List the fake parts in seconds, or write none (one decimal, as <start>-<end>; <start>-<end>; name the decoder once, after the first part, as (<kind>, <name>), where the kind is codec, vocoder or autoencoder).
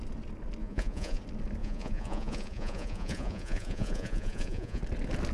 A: 0.6-1.2 (vocoder, Vocos); 1.6-4.8